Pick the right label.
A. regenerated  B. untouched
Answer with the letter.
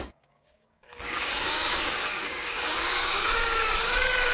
A